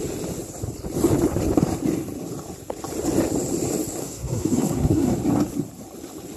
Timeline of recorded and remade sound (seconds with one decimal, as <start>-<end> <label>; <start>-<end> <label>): 0.0-4.0 recorded; 4.0-5.1 remade; 5.1-6.4 recorded